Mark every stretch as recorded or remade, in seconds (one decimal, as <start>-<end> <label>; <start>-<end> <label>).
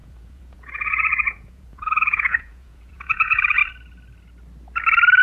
0.0-3.6 remade; 3.6-5.2 recorded